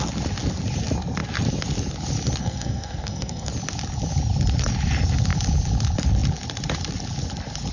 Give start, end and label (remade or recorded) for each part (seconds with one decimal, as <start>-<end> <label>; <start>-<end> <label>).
0.0-2.4 recorded; 2.4-3.5 remade; 3.5-7.7 recorded